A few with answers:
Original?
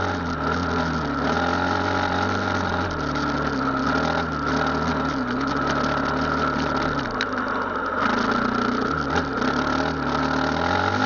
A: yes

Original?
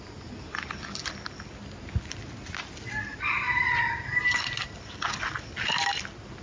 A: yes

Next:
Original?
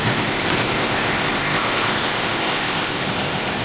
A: no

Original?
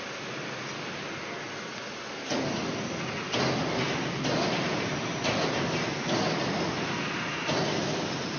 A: yes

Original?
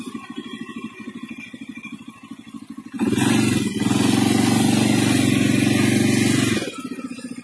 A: yes